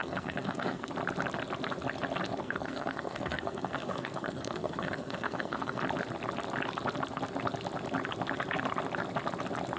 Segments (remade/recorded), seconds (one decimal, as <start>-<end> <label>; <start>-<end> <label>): 0.0-0.9 remade; 0.9-2.4 recorded; 2.4-5.8 remade; 5.8-9.8 recorded